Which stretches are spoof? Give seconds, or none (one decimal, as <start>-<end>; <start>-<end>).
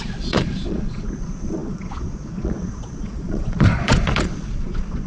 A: 0.0-5.1